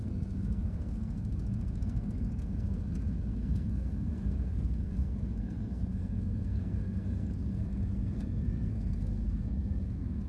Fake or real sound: fake